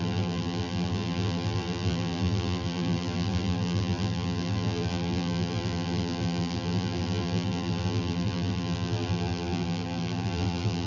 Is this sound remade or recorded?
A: remade